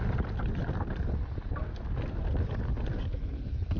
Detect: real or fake real